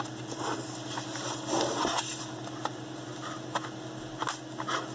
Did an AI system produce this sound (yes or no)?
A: no